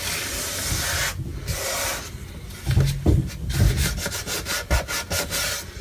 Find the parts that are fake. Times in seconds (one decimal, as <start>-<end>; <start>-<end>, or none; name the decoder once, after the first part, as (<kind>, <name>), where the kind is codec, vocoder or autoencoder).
none